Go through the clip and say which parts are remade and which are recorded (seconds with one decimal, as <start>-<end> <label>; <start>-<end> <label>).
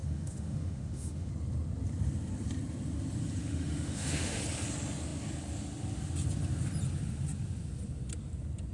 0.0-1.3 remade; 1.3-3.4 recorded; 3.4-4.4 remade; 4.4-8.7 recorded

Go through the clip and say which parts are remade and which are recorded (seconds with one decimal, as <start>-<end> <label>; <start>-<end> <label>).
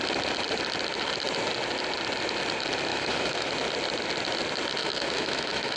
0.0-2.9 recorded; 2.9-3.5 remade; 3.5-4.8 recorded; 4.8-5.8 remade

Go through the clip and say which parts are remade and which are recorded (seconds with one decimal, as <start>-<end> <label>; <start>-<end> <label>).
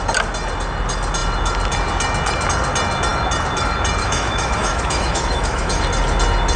0.0-4.0 recorded; 4.0-5.8 remade; 5.8-6.6 recorded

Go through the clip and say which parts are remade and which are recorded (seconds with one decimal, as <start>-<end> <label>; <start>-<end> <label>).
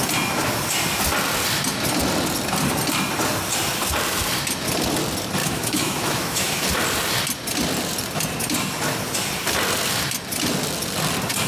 0.0-5.4 recorded; 5.4-6.6 remade; 6.6-11.5 recorded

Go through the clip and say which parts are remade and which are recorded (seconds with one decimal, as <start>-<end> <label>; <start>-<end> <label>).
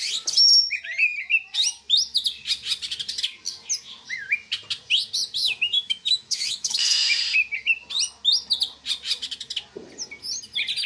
0.0-5.4 recorded; 5.4-7.2 remade; 7.2-10.9 recorded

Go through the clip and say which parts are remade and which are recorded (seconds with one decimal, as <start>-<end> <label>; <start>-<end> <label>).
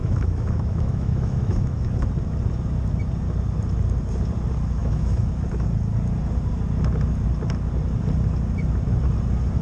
0.0-2.1 remade; 2.1-4.8 recorded; 4.8-5.3 remade; 5.3-9.6 recorded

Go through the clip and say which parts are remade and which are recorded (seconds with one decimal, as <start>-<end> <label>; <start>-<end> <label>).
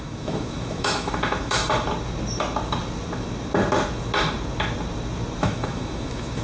0.0-1.6 remade; 1.6-5.4 recorded; 5.4-6.4 remade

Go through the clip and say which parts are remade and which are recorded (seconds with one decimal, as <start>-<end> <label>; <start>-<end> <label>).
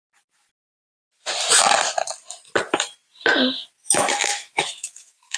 0.0-3.8 recorded; 3.8-5.4 remade